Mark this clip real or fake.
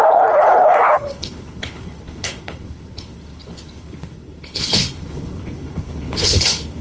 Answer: fake